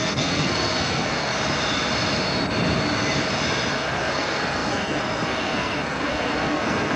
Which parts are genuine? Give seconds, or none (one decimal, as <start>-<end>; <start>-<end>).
1.3-3.7